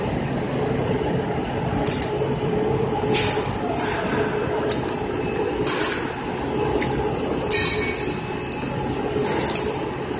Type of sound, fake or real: real